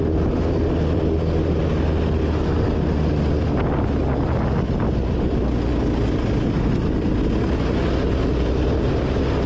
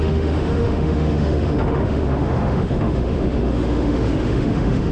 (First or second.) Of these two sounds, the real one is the first